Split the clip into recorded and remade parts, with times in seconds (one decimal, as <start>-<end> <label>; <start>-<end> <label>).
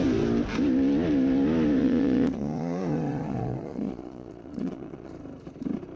0.0-1.8 recorded; 1.8-5.1 remade; 5.1-6.0 recorded